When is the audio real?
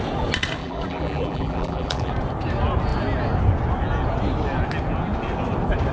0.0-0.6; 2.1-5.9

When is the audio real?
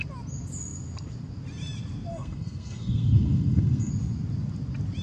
0.0-2.1; 3.9-5.0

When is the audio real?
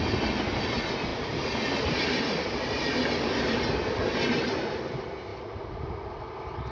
0.0-1.1; 4.8-5.3; 5.9-6.7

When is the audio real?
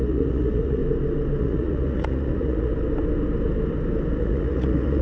0.8-1.4; 2.7-4.2